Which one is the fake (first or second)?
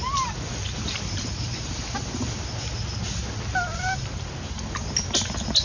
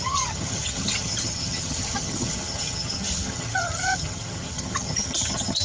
second